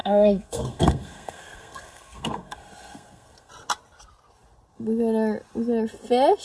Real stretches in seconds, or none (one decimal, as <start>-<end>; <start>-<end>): 3.5-6.4